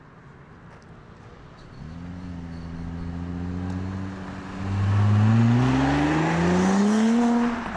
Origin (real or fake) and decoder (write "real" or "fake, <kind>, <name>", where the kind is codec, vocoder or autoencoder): real